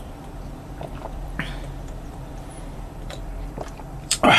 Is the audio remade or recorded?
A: remade